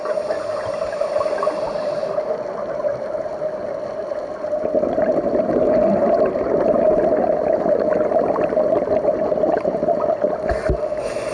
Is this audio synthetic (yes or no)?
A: no